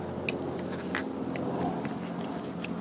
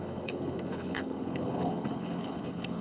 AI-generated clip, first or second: second